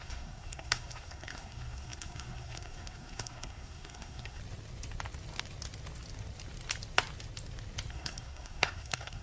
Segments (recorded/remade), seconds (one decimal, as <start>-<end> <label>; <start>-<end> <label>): 0.0-4.4 remade; 4.4-7.9 recorded; 7.9-9.2 remade